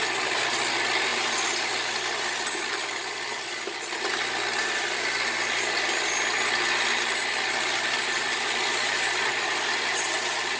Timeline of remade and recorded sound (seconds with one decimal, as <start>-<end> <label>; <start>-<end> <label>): 0.0-1.1 recorded; 1.1-4.1 remade; 4.1-10.6 recorded